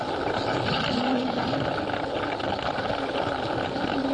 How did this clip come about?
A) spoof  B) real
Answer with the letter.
B